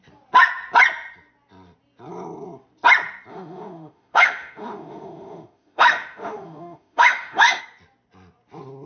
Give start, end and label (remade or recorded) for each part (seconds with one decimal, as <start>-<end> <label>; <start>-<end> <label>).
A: 0.0-3.3 recorded; 3.3-7.6 remade; 7.6-8.9 recorded